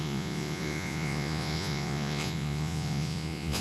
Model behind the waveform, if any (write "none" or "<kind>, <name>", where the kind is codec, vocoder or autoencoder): vocoder, Vocos